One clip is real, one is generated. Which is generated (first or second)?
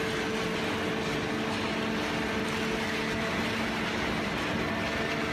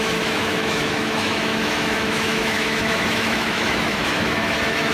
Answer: second